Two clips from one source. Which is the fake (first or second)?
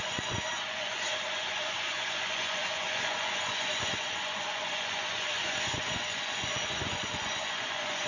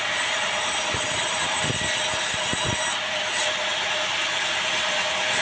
first